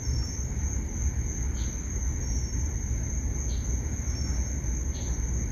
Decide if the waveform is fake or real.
real